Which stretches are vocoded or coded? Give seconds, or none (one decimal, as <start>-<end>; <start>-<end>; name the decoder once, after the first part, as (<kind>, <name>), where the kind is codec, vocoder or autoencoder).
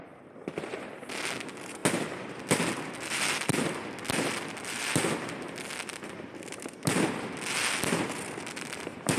none